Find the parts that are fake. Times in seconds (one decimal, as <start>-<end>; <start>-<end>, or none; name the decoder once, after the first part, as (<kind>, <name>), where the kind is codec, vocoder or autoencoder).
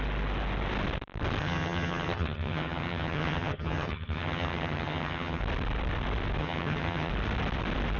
1.4-5.4 (vocoder, HiFi-GAN); 6.4-7.1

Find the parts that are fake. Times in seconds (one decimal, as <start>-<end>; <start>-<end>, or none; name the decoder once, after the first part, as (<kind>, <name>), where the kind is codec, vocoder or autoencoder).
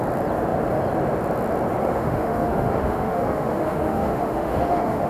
1.8-5.1 (autoencoder, DAC-VAE)